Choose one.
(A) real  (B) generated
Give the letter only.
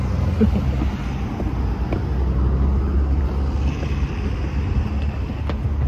A